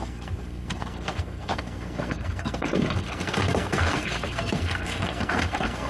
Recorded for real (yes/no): no